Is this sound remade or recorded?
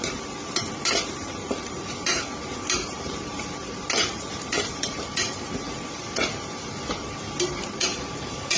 remade